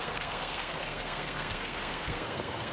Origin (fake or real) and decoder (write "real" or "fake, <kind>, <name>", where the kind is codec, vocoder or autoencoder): fake, codec, SNAC